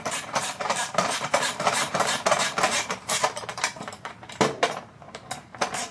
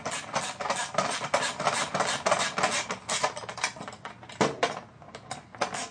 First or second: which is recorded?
second